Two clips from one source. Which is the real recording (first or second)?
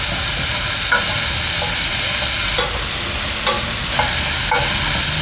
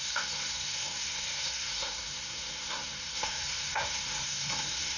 first